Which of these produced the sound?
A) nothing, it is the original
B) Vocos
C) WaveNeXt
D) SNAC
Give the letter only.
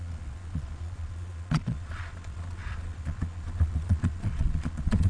B